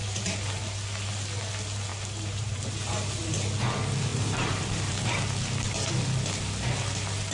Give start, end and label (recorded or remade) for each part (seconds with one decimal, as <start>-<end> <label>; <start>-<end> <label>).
0.0-0.6 remade; 0.6-1.9 recorded; 1.9-2.6 remade; 2.6-4.1 recorded; 4.1-5.1 remade; 5.1-7.3 recorded